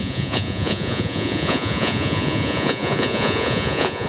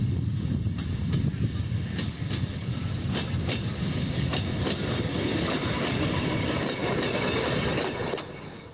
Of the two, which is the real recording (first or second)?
second